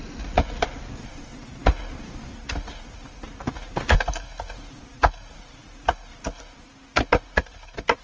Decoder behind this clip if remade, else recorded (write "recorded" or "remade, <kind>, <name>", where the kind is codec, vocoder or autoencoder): recorded